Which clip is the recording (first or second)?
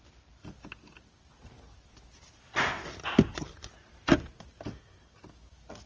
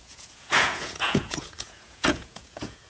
first